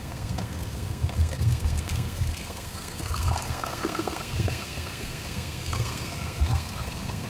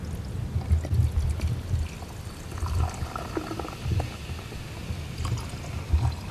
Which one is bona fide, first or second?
second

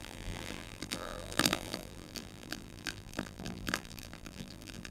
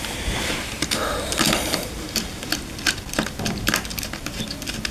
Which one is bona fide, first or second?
second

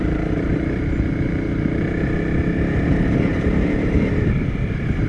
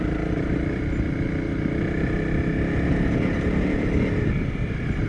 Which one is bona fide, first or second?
second